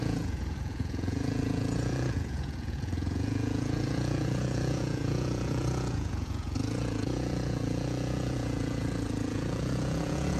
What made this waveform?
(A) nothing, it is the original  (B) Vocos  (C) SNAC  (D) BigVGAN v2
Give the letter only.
B